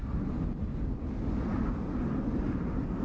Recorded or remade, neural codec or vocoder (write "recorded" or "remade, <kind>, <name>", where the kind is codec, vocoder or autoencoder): recorded